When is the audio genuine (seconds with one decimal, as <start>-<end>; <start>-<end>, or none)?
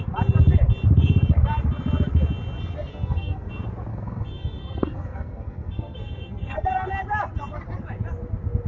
0.0-2.9; 3.5-3.9; 6.7-8.7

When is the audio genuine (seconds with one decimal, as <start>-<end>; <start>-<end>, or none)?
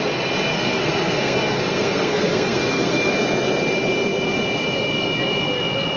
0.0-0.5; 3.1-6.0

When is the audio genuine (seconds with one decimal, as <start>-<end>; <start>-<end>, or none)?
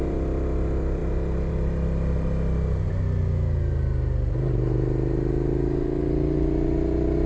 0.0-7.3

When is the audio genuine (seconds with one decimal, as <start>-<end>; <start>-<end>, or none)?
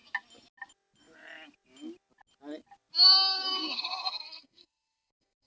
0.0-3.6